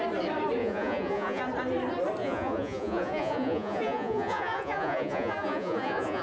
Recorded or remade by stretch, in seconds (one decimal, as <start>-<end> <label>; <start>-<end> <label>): 0.0-0.6 recorded; 0.6-1.4 remade; 1.4-2.2 recorded; 2.2-6.2 remade